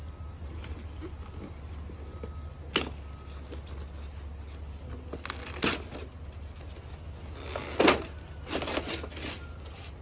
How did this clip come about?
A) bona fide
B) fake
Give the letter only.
A